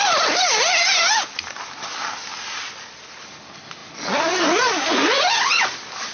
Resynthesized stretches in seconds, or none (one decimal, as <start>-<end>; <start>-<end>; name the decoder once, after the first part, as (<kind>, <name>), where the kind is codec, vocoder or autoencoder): 2.2-3.0 (vocoder, BigVGAN v2)